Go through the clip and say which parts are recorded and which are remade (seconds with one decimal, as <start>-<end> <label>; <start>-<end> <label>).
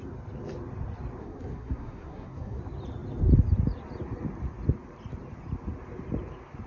0.0-1.2 recorded; 1.2-2.6 remade; 2.6-6.7 recorded